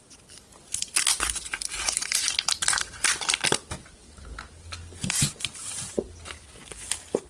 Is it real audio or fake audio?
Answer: real